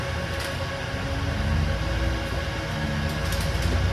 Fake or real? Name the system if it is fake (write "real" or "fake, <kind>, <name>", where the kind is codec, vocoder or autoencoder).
real